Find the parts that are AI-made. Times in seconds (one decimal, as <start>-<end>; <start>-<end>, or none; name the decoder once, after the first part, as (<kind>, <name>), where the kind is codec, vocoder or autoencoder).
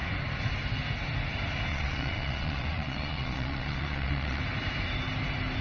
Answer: 1.7-4.4 (vocoder, Vocos)